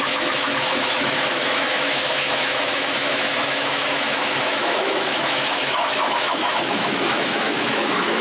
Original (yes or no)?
no